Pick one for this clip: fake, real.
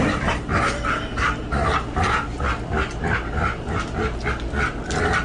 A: real